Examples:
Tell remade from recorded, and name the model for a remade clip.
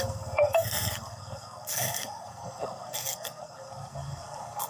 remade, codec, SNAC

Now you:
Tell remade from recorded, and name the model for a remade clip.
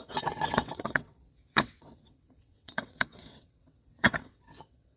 remade, vocoder, WaveNeXt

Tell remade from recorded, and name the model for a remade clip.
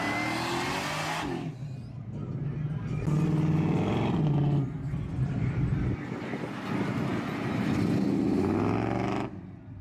recorded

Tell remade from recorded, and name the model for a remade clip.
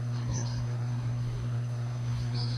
remade, codec, SNAC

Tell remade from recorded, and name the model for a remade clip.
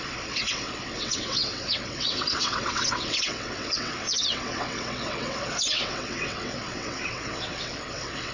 remade, vocoder, WaveNeXt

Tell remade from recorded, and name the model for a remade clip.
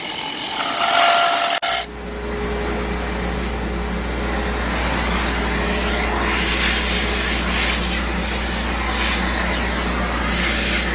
recorded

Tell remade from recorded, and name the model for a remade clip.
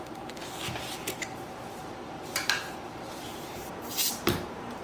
remade, vocoder, BigVGAN v2